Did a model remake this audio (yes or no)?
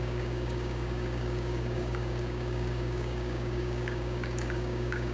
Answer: yes